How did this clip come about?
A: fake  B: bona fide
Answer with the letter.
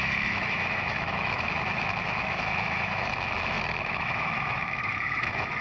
A